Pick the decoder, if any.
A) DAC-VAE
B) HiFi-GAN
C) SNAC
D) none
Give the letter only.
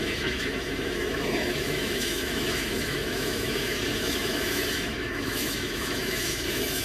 A